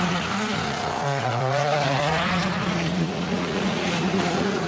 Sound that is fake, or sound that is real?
fake